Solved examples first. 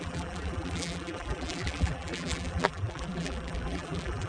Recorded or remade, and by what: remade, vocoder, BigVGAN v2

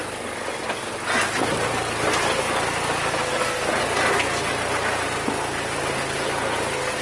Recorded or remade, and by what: recorded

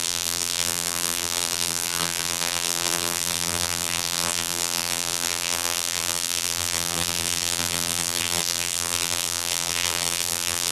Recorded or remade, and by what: remade, vocoder, BigVGAN v2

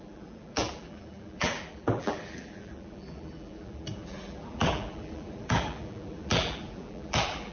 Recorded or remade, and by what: remade, vocoder, BigVGAN v2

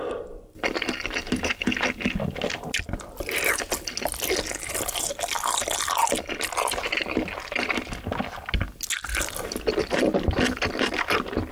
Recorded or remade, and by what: recorded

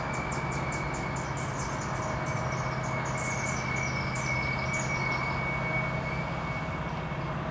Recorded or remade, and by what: recorded